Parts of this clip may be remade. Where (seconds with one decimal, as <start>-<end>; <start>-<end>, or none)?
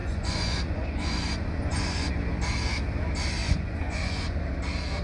0.0-2.1; 3.4-4.4